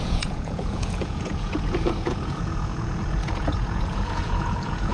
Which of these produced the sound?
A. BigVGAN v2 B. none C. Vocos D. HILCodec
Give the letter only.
C